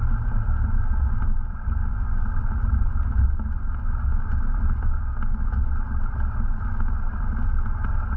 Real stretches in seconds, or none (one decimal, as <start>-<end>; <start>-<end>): 0.0-1.8; 2.4-8.2